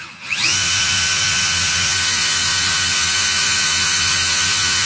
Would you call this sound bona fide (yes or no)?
no